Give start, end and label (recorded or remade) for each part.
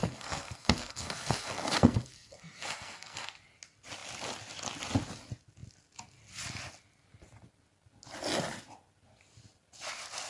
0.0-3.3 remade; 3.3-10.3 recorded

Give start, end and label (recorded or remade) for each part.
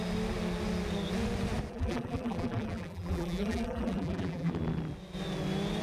0.0-1.7 recorded; 1.7-4.5 remade; 4.5-5.8 recorded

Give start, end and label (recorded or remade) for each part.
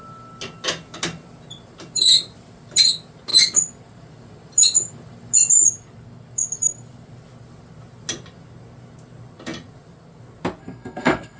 0.0-10.6 recorded; 10.6-11.4 remade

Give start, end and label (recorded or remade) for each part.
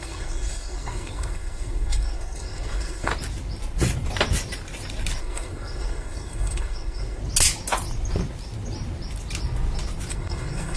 0.0-3.1 remade; 3.1-5.2 recorded; 5.2-7.2 remade; 7.2-10.1 recorded; 10.1-10.8 remade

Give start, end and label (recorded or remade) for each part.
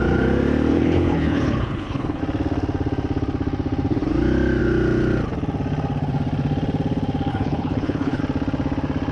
0.0-0.7 recorded; 0.7-2.2 remade; 2.2-7.3 recorded; 7.3-8.2 remade; 8.2-9.1 recorded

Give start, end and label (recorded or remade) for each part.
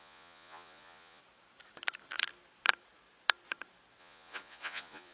0.0-1.2 remade; 1.2-4.0 recorded; 4.0-5.1 remade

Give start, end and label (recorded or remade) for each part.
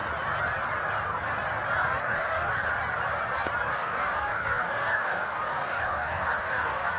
0.0-2.0 recorded; 2.0-2.7 remade; 2.7-3.7 recorded; 3.7-7.0 remade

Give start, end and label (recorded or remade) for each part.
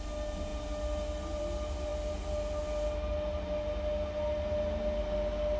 0.0-5.6 recorded